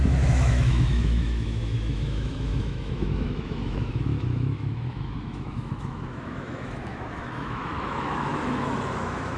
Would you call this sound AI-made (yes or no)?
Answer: yes